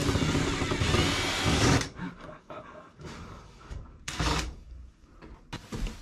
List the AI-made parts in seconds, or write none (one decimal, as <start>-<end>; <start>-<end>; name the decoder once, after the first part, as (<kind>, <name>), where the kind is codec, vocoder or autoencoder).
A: 1.5-5.1 (codec, DAC)

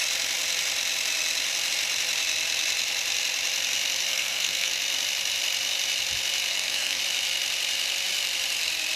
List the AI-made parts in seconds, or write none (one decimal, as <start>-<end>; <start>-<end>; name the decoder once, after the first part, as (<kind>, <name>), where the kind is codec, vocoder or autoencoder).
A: 4.1-4.7 (codec, SNAC); 6.5-7.0

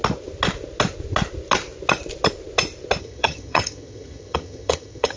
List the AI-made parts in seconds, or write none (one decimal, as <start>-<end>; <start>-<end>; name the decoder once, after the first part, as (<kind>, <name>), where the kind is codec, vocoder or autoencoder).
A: 3.0-5.2 (vocoder, HiFi-GAN)

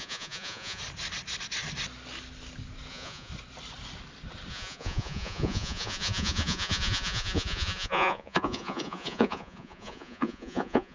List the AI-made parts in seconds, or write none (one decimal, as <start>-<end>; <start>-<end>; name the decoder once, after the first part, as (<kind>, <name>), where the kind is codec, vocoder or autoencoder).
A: 0.0-0.8 (vocoder, Vocos); 2.9-3.3; 4.5-10.9

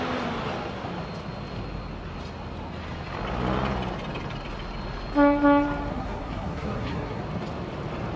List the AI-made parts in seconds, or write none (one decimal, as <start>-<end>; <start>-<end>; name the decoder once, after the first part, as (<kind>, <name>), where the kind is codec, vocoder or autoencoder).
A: 5.9-7.2 (codec, SNAC)